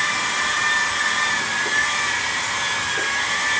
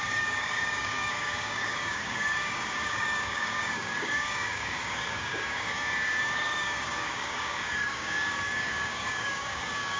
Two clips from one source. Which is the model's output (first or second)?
second